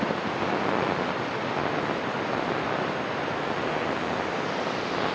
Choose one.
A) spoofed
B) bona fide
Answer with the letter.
B